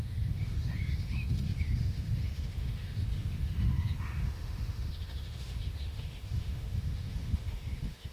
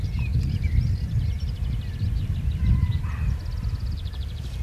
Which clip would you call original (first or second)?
second